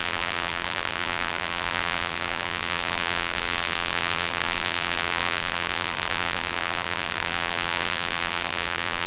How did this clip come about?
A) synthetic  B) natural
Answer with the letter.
A